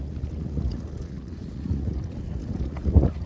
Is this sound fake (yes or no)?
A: yes